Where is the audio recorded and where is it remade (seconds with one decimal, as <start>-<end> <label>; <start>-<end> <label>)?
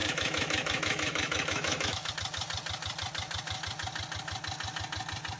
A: 0.0-2.1 remade; 2.1-5.4 recorded